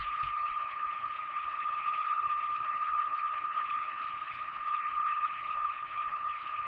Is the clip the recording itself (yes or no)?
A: no